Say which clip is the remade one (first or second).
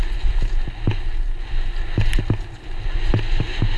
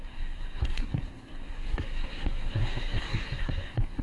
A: second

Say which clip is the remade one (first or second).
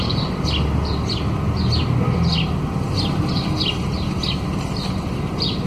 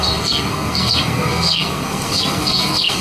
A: second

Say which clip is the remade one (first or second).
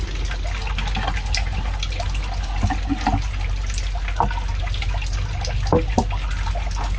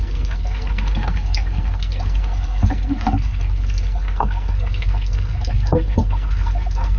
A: second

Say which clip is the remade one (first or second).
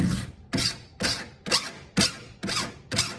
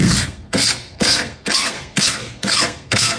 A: second